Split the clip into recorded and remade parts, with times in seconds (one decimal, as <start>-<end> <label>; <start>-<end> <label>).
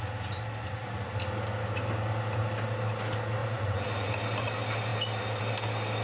0.0-3.4 recorded; 3.4-4.1 remade; 4.1-6.0 recorded